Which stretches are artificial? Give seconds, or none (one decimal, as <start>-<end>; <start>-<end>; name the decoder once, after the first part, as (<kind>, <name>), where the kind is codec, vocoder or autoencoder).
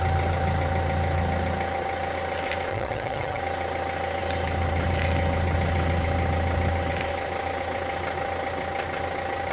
2.7-3.4 (vocoder, HiFi-GAN)